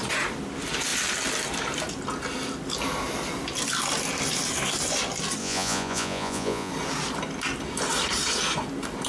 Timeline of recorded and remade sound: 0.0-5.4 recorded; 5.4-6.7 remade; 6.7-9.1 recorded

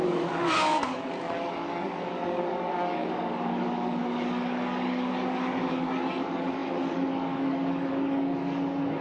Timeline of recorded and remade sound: 0.0-9.0 remade

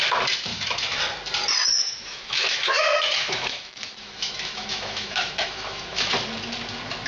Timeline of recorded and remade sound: 0.0-0.5 recorded; 0.5-1.0 remade; 1.0-1.8 recorded; 1.8-6.1 remade; 6.1-7.1 recorded

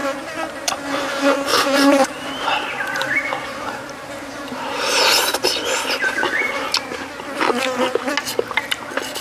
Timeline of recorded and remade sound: 0.0-0.7 remade; 0.7-1.5 recorded; 1.5-6.7 remade; 6.7-9.2 recorded

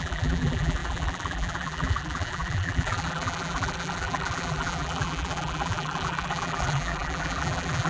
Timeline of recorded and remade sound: 0.0-7.9 remade

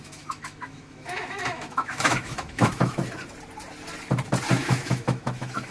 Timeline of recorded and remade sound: 0.0-3.0 remade; 3.0-4.5 recorded; 4.5-5.7 remade

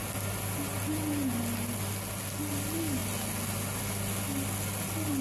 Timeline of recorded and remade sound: 0.0-5.2 recorded